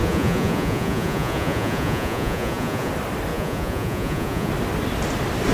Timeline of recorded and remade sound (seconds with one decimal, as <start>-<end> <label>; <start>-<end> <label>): 0.0-2.9 remade; 2.9-3.3 recorded; 3.3-4.5 remade; 4.5-5.5 recorded